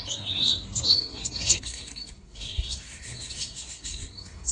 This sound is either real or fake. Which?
fake